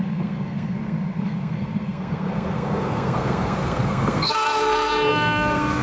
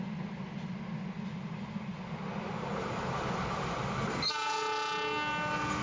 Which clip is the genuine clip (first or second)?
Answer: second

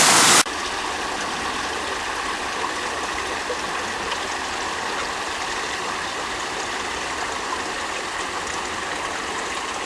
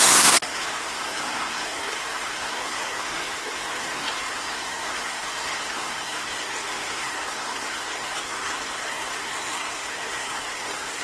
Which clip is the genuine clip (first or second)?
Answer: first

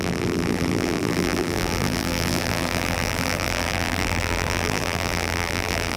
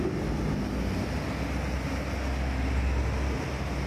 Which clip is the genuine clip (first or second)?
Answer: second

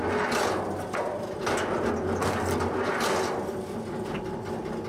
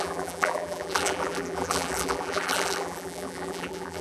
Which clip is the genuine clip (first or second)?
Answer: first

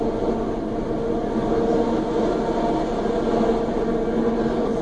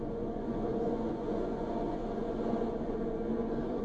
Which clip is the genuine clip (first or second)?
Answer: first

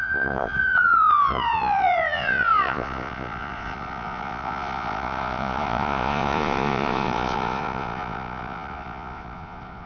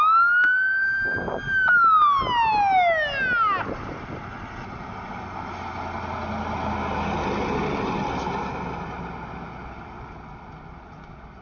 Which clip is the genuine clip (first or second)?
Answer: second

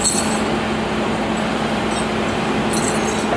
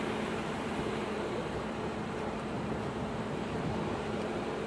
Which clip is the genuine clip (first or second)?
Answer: first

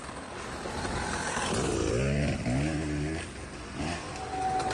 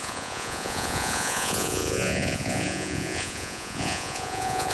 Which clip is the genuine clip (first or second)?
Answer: first